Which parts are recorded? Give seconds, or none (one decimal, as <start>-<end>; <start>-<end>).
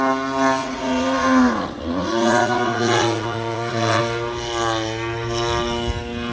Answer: 0.0-0.6; 4.0-6.3